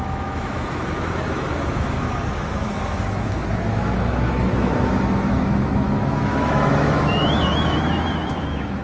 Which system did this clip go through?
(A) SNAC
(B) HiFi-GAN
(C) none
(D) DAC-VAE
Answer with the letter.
D